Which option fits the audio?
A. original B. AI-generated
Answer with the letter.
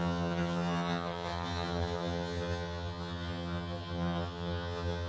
B